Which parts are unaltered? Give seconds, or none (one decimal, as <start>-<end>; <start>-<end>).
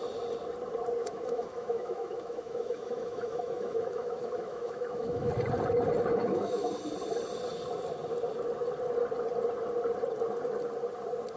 0.0-1.0; 5.3-6.2; 6.7-11.4